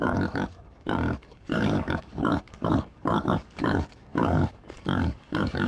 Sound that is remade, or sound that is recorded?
remade